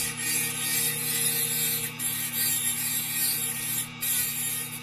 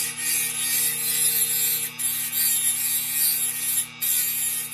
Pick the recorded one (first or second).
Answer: second